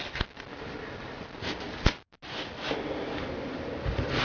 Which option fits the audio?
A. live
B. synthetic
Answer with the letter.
A